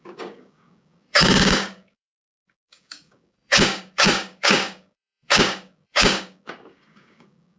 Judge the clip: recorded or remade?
remade